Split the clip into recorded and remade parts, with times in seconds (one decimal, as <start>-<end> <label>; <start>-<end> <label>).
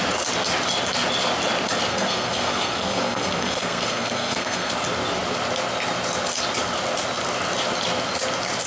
0.0-1.9 recorded; 1.9-4.7 remade; 4.7-8.7 recorded